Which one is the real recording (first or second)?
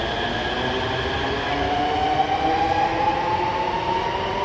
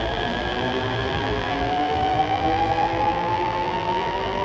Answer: first